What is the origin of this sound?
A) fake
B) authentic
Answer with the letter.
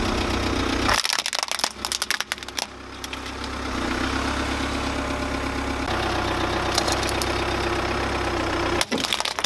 B